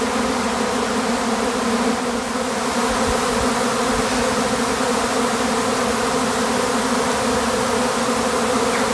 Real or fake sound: real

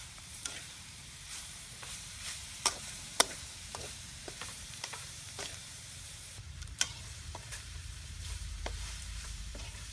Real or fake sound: fake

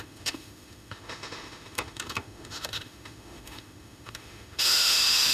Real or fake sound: fake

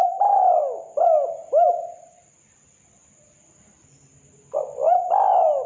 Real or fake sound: real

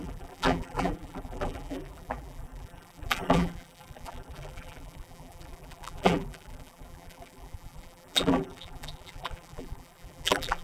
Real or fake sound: fake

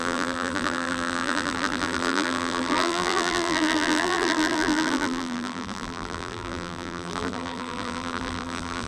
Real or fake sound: fake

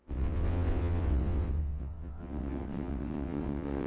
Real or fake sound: fake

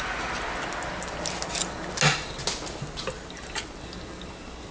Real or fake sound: real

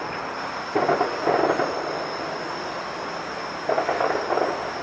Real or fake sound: real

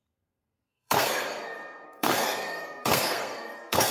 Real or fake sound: fake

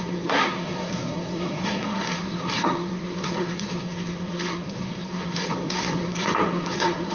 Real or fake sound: fake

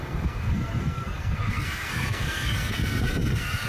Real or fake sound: fake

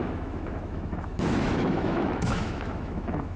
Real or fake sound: fake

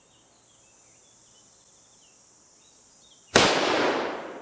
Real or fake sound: real